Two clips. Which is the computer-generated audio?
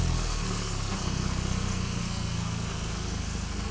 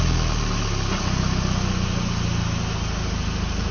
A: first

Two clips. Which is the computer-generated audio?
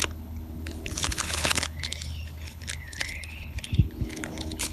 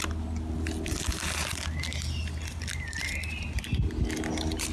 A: first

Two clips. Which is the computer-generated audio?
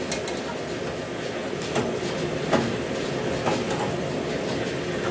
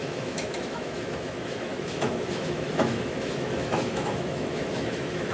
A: second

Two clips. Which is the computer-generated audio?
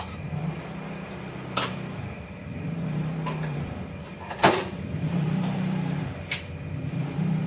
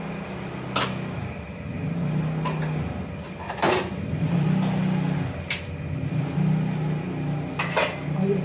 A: first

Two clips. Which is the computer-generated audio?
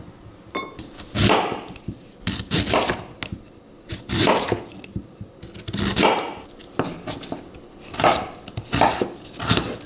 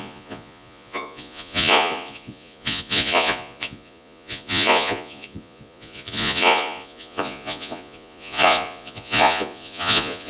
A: second